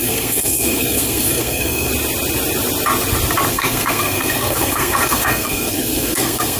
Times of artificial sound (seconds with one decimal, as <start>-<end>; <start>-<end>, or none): 0.0-1.9; 3.5-6.6